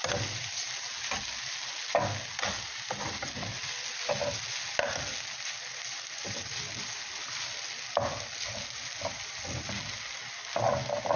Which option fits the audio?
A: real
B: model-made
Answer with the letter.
A